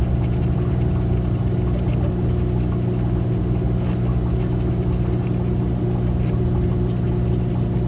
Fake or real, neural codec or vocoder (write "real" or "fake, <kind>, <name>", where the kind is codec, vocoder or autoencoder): real